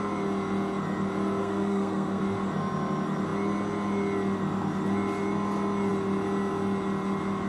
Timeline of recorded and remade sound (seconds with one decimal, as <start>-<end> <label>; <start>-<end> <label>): 0.0-1.4 recorded; 1.4-2.2 remade; 2.2-7.5 recorded